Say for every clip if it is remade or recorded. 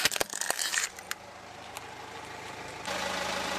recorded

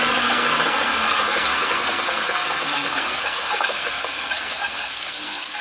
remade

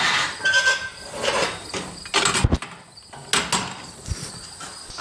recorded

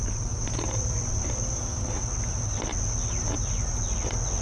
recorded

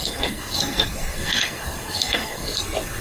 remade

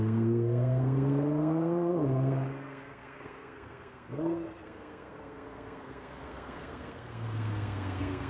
remade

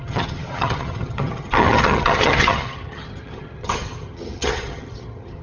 remade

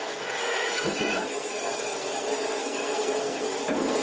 remade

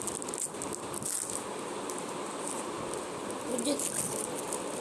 recorded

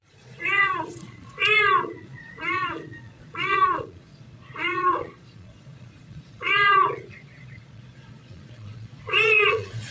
remade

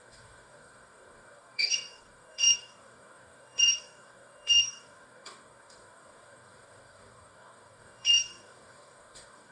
remade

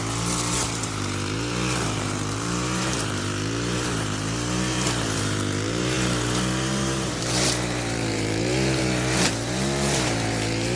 remade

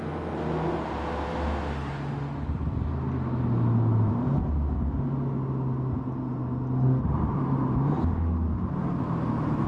recorded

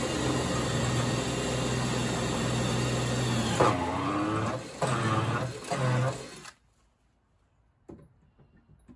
recorded